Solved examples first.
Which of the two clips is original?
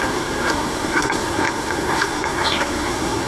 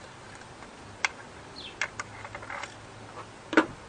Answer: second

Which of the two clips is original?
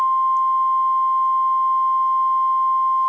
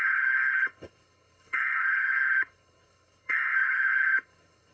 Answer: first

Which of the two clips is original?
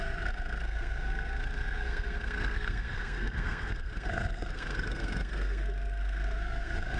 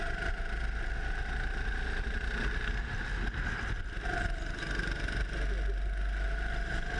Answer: second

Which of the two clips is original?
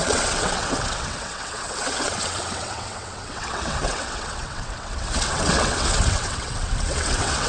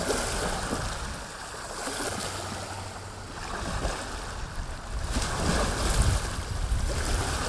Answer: second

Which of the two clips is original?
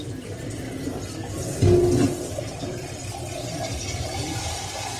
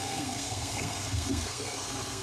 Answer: first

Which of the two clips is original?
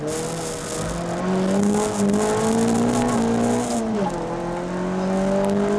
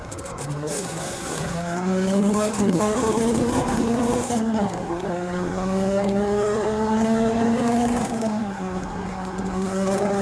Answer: first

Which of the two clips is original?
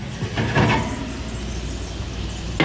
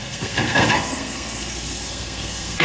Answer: first